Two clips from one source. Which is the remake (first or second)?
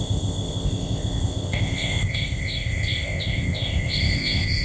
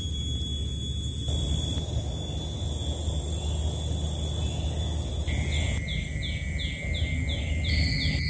first